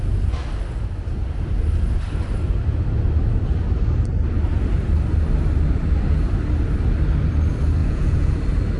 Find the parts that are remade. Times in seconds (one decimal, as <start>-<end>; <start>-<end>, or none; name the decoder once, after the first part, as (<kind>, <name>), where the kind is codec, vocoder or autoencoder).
7.8-8.4 (vocoder, Vocos)